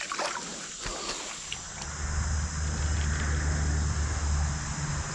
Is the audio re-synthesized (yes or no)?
no